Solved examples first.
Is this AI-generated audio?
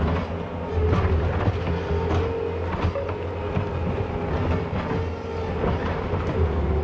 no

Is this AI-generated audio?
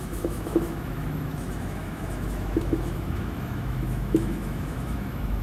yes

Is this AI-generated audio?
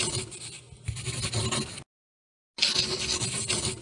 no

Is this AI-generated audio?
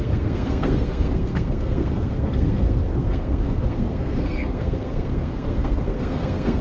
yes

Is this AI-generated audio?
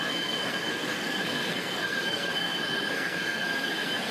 yes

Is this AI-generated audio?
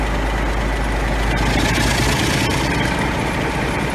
no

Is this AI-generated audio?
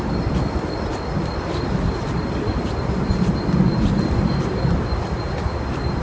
no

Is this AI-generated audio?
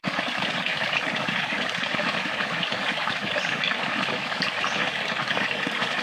yes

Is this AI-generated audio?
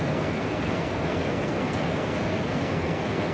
yes